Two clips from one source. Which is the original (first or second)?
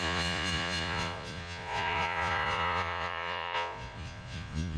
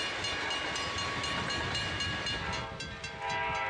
second